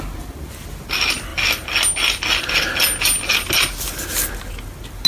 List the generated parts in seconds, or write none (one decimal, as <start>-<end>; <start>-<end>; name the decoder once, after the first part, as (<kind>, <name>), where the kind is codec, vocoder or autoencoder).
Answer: none